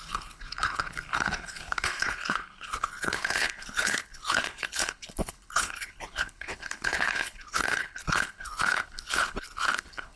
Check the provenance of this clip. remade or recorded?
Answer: remade